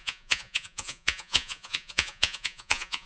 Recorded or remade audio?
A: remade